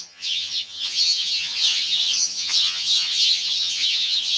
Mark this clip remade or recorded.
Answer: remade